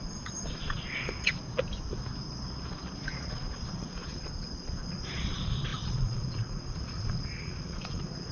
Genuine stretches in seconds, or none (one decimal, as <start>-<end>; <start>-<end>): 1.4-3.2